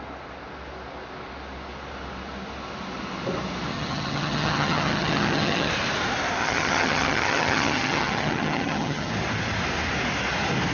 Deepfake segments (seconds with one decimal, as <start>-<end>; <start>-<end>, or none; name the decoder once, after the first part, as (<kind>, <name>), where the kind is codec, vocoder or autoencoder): 3.7-5.7 (vocoder, HiFi-GAN); 6.4-9.1